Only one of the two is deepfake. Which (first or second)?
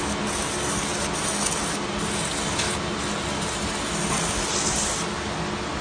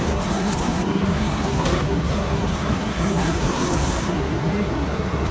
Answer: second